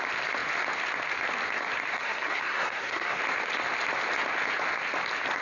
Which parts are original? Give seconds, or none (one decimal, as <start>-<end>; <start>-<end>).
0.0-1.9; 3.2-5.4